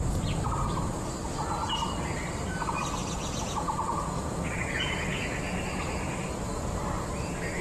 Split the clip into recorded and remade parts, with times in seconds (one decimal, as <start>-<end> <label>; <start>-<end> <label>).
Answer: 0.0-3.0 recorded; 3.0-6.1 remade; 6.1-7.6 recorded